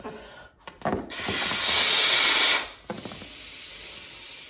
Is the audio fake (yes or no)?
no